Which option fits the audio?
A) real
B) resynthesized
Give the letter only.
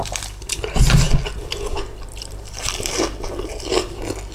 A